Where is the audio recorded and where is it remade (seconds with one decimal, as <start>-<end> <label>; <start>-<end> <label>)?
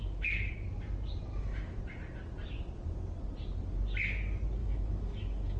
0.0-0.5 remade; 0.5-1.3 recorded; 1.3-1.8 remade; 1.8-4.6 recorded; 4.6-5.6 remade